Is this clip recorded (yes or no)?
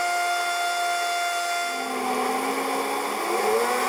yes